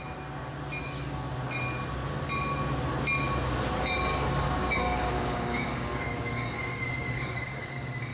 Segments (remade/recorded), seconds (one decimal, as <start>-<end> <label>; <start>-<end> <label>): 0.0-0.8 recorded; 0.8-1.3 remade; 1.3-4.1 recorded; 4.1-8.1 remade